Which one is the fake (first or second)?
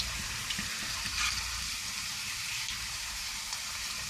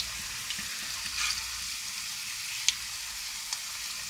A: first